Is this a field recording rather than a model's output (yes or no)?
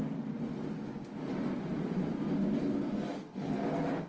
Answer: yes